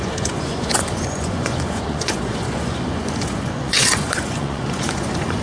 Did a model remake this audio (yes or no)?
yes